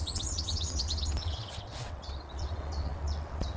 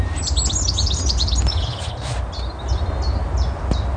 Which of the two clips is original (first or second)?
second